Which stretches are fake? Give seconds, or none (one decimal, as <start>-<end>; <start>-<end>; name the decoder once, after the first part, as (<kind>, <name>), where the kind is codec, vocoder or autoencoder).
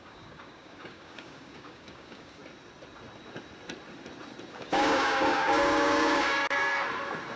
0.0-2.4 (codec, DAC); 4.5-6.7